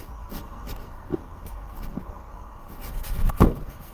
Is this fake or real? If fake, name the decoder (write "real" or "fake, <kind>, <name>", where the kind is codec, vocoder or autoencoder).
fake, codec, SNAC